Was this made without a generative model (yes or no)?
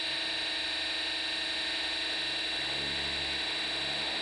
yes